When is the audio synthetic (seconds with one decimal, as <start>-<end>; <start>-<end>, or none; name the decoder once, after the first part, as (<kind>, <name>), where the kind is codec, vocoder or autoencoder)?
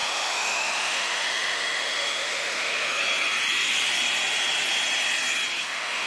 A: 0.0-3.0 (autoencoder, DAC-VAE); 5.6-6.1